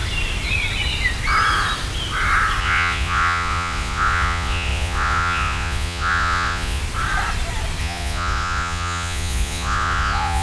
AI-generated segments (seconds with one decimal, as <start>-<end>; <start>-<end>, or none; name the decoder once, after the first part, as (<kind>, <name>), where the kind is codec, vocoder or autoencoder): 2.6-6.8 (vocoder, Vocos); 7.8-10.4